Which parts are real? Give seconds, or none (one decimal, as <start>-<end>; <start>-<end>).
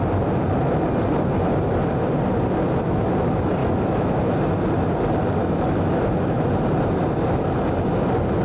0.0-3.6; 4.3-5.4; 6.0-8.4